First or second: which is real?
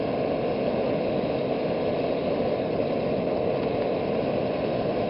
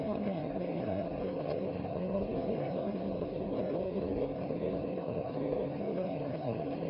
first